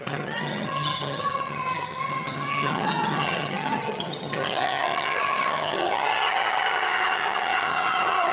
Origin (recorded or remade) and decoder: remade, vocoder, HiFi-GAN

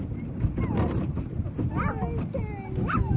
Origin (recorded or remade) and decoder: recorded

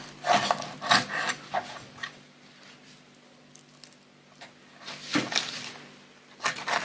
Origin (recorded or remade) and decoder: recorded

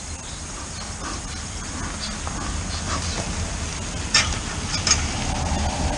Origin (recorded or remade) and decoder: recorded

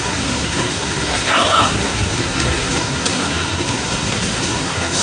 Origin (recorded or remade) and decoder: remade, codec, SNAC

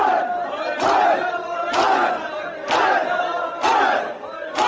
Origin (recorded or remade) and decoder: recorded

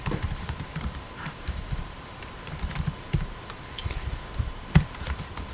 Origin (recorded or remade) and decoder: remade, vocoder, BigVGAN v2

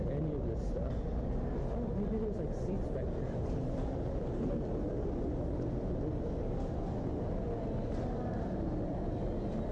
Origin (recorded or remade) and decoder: recorded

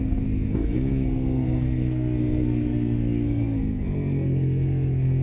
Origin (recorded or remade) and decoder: remade, codec, SNAC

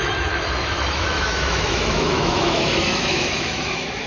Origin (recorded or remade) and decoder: remade, autoencoder, DAC-VAE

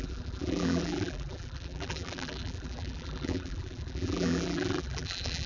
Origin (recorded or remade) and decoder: remade, vocoder, BigVGAN v2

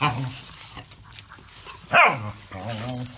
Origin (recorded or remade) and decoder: recorded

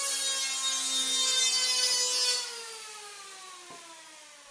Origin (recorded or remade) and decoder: recorded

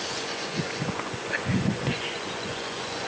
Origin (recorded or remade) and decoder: remade, vocoder, Vocos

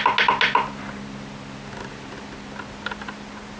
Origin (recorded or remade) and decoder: recorded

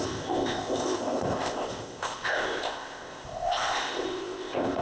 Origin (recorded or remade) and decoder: remade, codec, ZipCodec